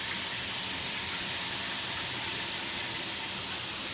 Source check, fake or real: real